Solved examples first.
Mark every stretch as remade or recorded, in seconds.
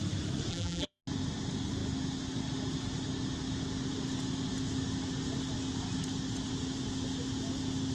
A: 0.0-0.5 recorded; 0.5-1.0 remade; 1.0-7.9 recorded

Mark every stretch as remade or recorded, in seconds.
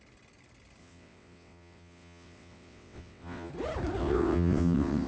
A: 0.0-0.8 recorded; 0.8-3.5 remade; 3.5-4.0 recorded; 4.0-5.1 remade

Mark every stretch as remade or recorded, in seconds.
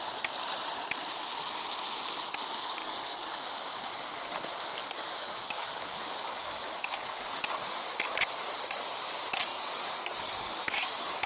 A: 0.0-2.8 recorded; 2.8-3.3 remade; 3.3-4.8 recorded; 4.8-7.4 remade; 7.4-9.5 recorded; 9.5-11.3 remade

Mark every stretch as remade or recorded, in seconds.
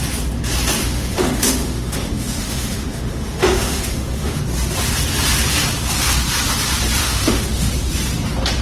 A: 0.0-0.8 recorded; 0.8-4.4 remade; 4.4-7.0 recorded; 7.0-7.7 remade; 7.7-8.6 recorded